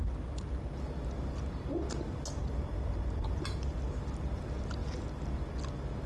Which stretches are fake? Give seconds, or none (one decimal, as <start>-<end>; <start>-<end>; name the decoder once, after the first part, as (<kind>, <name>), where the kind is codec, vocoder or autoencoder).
none